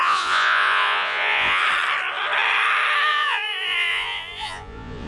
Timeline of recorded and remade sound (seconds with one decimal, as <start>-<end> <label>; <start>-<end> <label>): 0.0-1.6 remade; 1.6-3.1 recorded; 3.1-5.1 remade